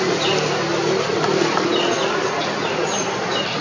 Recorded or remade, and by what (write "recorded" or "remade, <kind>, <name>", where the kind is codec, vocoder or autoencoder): remade, vocoder, BigVGAN v2